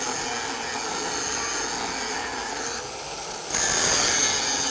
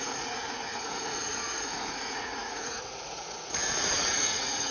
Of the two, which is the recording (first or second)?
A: first